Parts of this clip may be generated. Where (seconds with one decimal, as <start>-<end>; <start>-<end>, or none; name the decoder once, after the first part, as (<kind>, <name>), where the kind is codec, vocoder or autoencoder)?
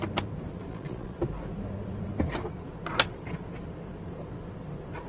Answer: 0.7-1.2 (vocoder, Vocos)